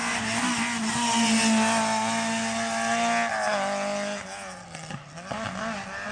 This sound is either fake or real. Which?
real